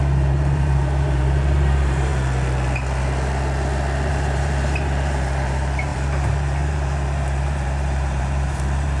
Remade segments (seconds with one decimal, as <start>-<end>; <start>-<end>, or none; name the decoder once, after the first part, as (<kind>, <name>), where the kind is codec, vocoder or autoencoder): 0.0-2.1 (vocoder, BigVGAN v2); 4.1-9.0